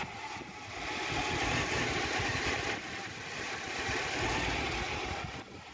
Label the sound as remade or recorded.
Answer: recorded